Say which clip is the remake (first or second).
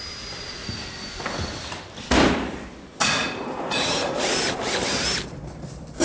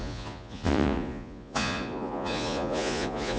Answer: second